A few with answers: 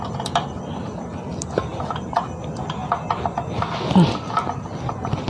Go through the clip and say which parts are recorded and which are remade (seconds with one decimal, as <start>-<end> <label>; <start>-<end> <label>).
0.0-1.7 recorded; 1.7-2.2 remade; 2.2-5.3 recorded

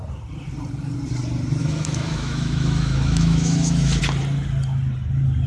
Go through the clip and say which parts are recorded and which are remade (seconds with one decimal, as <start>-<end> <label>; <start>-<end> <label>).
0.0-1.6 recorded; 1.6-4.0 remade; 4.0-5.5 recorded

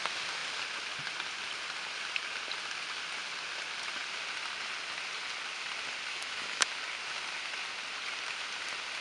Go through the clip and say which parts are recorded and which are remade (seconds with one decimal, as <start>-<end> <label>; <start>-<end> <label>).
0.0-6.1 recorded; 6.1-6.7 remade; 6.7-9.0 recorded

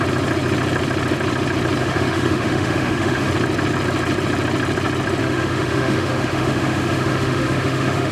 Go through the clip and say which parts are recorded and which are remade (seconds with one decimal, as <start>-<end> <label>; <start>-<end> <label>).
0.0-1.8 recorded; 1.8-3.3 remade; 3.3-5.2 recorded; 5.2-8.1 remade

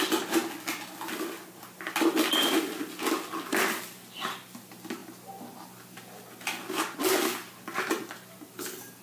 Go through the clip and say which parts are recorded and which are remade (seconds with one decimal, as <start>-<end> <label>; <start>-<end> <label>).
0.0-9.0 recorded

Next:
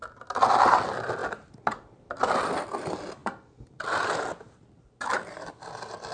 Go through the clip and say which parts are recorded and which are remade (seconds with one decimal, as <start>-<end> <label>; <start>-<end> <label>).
0.0-6.1 recorded

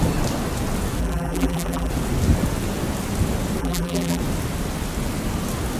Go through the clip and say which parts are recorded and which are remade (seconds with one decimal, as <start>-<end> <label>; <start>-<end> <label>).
0.0-1.0 recorded; 1.0-1.9 remade; 1.9-3.6 recorded; 3.6-4.2 remade; 4.2-5.8 recorded

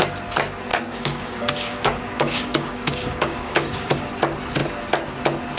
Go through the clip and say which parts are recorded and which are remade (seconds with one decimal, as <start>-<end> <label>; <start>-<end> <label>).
0.0-0.7 recorded; 0.7-4.1 remade; 4.1-5.6 recorded